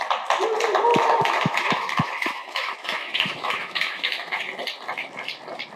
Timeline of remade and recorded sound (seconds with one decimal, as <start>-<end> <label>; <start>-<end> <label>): 0.0-0.9 recorded; 0.9-4.4 remade; 4.4-5.8 recorded